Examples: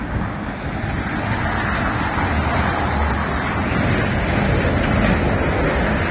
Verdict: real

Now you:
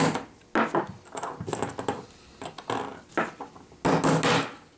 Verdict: real